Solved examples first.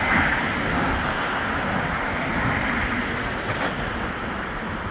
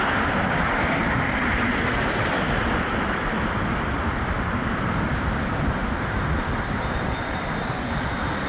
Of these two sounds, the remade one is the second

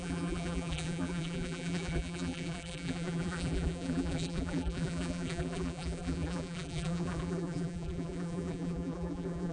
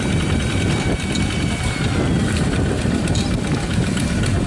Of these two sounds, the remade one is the first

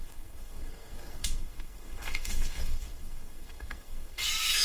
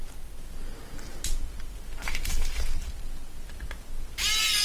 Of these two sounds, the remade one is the first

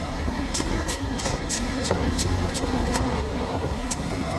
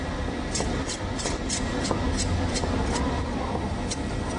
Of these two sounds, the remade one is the first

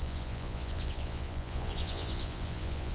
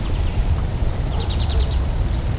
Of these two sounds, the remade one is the first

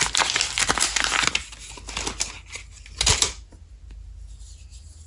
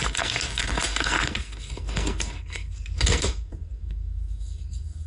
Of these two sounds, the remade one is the second